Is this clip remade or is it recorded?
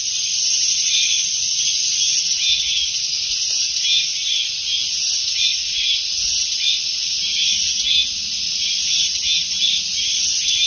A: recorded